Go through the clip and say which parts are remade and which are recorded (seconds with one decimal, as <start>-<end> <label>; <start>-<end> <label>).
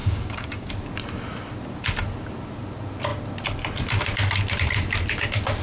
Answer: 0.0-0.7 remade; 0.7-5.6 recorded